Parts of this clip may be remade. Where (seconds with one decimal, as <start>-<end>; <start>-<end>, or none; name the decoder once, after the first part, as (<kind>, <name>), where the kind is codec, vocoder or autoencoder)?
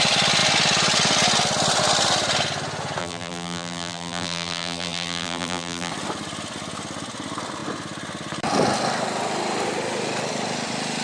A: 3.0-5.9 (vocoder, BigVGAN v2)